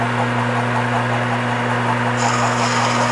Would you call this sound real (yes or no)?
yes